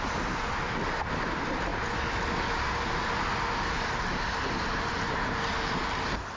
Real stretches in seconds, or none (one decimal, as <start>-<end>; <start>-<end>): 0.0-6.4